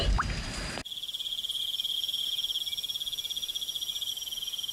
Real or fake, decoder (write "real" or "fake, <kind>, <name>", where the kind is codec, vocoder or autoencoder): real